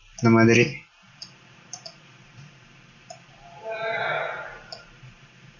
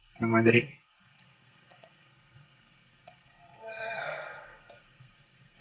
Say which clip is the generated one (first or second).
second